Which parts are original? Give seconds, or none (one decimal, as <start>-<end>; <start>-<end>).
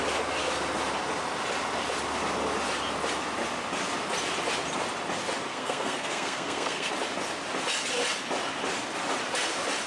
0.0-5.5; 6.9-9.9